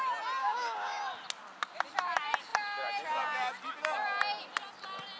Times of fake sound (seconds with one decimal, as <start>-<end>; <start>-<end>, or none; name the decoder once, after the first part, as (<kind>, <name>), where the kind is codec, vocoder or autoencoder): 0.4-1.0 (codec, DAC)